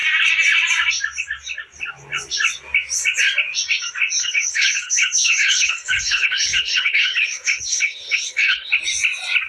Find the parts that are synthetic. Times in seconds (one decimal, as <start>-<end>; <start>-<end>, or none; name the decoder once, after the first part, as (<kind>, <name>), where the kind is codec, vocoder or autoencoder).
4.2-8.7 (codec, HILCodec)